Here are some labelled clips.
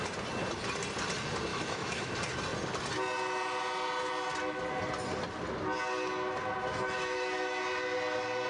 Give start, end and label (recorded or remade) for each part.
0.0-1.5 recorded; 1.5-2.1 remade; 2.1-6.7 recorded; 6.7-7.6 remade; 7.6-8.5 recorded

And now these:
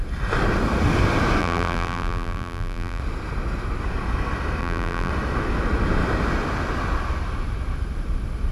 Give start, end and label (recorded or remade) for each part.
0.0-1.4 recorded; 1.4-3.0 remade; 3.0-4.6 recorded; 4.6-5.1 remade; 5.1-8.5 recorded

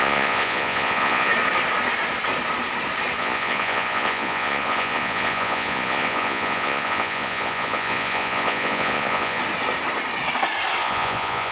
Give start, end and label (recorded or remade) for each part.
0.0-1.3 remade; 1.3-3.2 recorded; 3.2-9.4 remade; 9.4-10.8 recorded; 10.8-11.5 remade

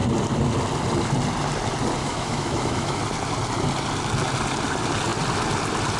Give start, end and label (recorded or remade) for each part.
0.0-2.0 recorded; 2.0-3.0 remade; 3.0-6.0 recorded

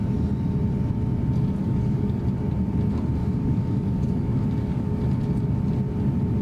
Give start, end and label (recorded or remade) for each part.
0.0-1.6 recorded; 1.6-2.2 remade; 2.2-3.2 recorded; 3.2-4.9 remade; 4.9-6.4 recorded

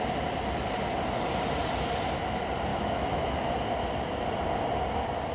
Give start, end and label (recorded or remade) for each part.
0.0-2.7 recorded; 2.7-3.5 remade; 3.5-5.3 recorded

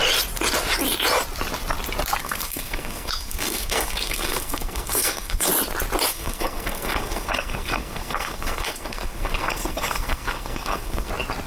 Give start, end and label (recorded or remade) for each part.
0.0-2.2 recorded; 2.2-5.5 remade; 5.5-6.1 recorded; 6.1-11.1 remade; 11.1-11.5 recorded

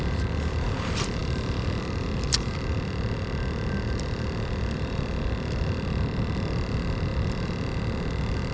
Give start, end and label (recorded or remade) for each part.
0.0-8.5 recorded